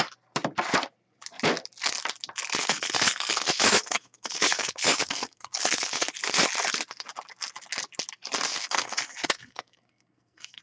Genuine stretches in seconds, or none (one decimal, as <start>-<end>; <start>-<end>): 0.0-2.6; 6.1-8.5